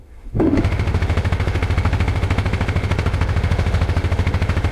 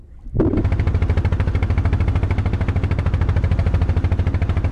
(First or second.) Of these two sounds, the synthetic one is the first